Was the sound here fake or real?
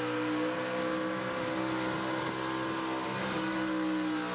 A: real